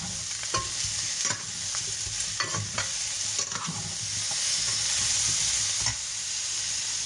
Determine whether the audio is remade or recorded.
recorded